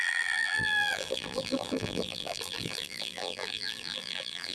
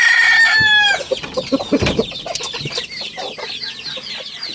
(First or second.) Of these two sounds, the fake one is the first